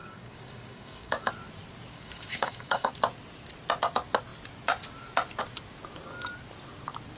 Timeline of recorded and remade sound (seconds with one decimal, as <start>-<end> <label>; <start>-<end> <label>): 0.0-1.3 remade; 1.3-1.9 recorded; 1.9-2.9 remade; 2.9-7.2 recorded